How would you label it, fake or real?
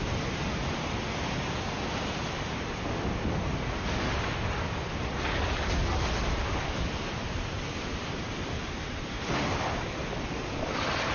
real